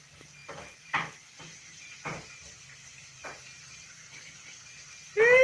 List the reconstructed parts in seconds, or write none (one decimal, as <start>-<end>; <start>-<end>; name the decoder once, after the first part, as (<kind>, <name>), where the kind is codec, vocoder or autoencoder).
0.4-3.0 (vocoder, BigVGAN v2)